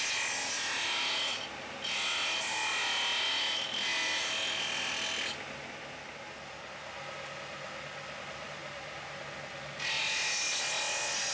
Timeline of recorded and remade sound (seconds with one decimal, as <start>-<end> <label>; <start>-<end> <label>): 0.0-11.3 recorded

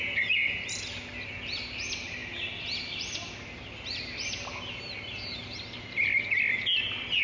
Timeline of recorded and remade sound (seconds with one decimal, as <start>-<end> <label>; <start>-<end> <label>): 0.0-0.6 remade; 0.6-7.2 recorded

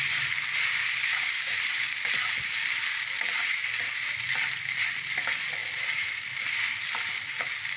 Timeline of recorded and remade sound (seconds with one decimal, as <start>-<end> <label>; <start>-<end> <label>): 0.0-7.8 recorded

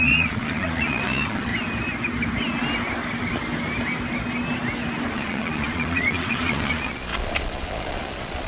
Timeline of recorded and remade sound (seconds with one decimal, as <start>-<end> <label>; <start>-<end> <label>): 0.0-1.5 remade; 1.5-5.1 recorded; 5.1-8.5 remade